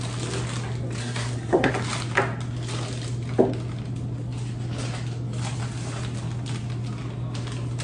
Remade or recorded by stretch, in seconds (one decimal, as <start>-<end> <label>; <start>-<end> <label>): 0.0-1.0 recorded; 1.0-1.7 remade; 1.7-7.8 recorded